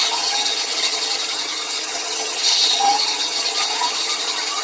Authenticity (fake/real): fake